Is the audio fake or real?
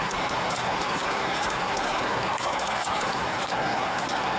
fake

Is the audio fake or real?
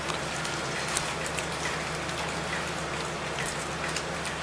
real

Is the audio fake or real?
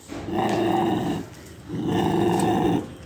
real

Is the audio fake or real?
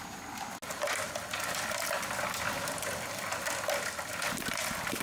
real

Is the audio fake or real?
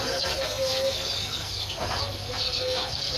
fake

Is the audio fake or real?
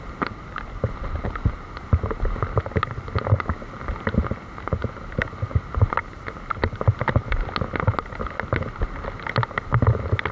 real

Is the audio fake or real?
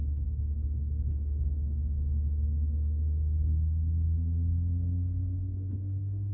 fake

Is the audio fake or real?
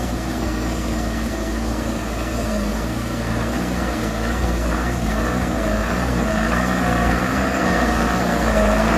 fake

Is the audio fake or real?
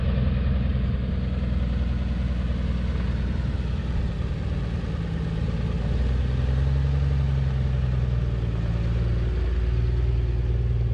real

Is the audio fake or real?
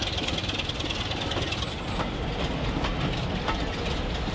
real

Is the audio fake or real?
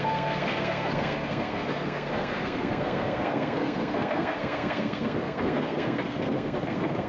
fake